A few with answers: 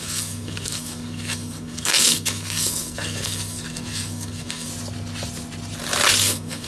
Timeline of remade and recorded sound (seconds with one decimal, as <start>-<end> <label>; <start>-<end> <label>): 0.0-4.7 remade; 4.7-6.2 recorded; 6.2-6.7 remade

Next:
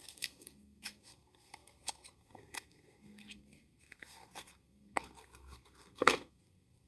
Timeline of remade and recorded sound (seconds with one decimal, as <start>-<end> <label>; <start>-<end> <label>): 0.0-6.9 remade

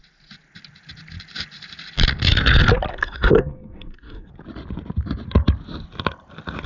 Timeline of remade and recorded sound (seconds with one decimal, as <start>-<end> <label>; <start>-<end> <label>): 0.0-2.9 recorded; 2.9-4.3 remade; 4.3-6.7 recorded

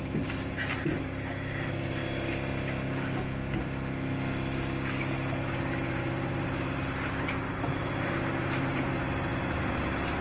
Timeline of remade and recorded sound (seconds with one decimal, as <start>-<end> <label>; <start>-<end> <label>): 0.0-10.2 recorded

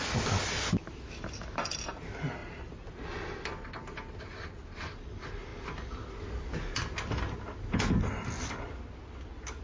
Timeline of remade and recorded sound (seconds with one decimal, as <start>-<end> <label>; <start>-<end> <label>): 0.0-9.6 recorded

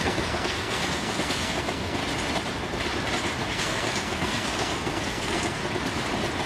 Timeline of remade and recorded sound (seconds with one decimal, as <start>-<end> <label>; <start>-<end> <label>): 0.0-2.0 remade; 2.0-3.5 recorded; 3.5-5.6 remade; 5.6-6.5 recorded

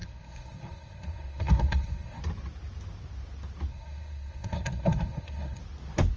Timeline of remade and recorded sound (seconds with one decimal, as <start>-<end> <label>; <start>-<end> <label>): 0.0-2.2 remade; 2.2-3.7 recorded; 3.7-5.6 remade; 5.6-6.2 recorded

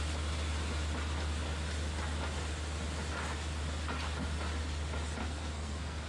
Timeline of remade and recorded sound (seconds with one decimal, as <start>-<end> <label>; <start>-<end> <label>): 0.0-5.2 recorded; 5.2-6.1 remade